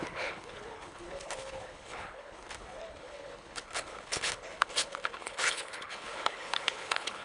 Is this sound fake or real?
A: fake